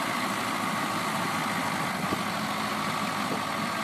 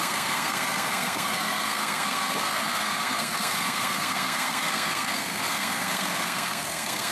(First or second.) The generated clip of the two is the second